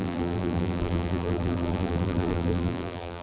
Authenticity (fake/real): fake